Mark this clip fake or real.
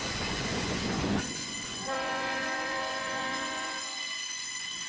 fake